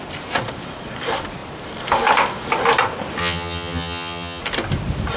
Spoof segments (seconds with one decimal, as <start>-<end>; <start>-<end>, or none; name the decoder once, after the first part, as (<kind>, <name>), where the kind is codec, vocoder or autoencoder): 3.2-4.4 (vocoder, HiFi-GAN)